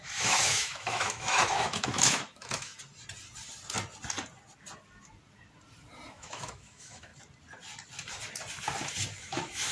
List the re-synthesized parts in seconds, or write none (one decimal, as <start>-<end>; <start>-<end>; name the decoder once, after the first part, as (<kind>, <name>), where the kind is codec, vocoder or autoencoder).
0.0-2.7 (autoencoder, DAC-VAE); 6.1-7.1; 9.2-9.7